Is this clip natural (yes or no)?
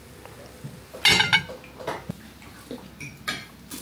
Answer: yes